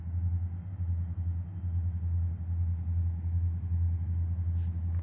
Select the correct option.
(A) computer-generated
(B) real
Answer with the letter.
B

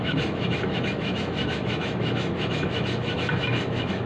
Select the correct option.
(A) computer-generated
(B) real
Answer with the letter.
A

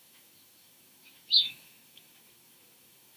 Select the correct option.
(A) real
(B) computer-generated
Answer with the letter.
B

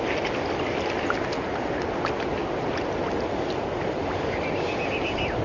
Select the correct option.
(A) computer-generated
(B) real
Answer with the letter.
B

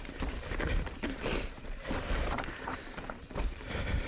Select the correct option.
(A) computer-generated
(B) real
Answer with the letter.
A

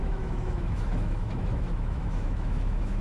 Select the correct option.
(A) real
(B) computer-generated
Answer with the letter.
B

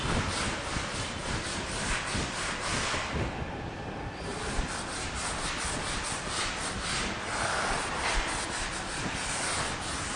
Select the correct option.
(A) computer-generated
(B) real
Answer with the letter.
B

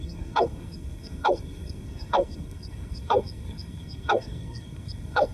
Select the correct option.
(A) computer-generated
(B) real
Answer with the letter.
A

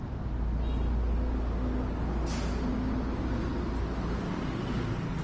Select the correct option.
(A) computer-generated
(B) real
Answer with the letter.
B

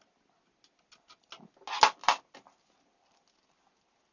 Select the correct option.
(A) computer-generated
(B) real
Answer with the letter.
B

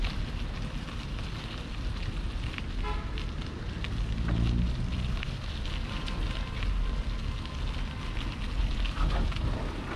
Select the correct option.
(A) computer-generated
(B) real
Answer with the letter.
B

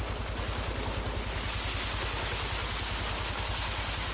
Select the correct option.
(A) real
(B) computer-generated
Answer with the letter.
A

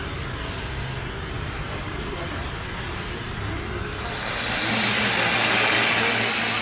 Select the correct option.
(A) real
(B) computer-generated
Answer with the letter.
A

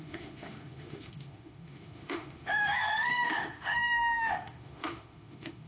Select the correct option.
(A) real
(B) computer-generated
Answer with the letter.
B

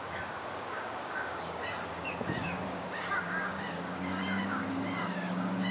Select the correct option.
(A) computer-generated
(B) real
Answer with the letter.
A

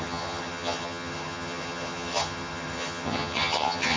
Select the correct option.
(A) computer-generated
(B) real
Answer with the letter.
A